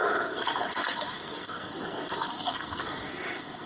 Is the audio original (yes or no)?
no